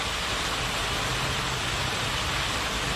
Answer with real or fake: real